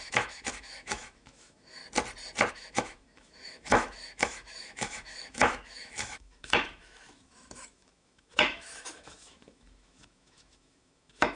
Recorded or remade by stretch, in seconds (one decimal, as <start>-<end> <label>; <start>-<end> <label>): 0.0-1.8 remade; 1.8-2.5 recorded; 2.5-11.4 remade